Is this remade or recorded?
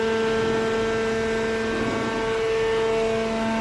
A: recorded